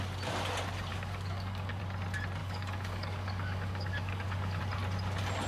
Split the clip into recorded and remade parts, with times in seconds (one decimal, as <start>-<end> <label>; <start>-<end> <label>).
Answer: 0.0-0.9 recorded; 0.9-1.8 remade; 1.8-2.4 recorded; 2.4-4.6 remade; 4.6-5.5 recorded